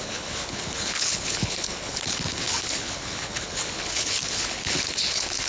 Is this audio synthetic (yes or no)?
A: yes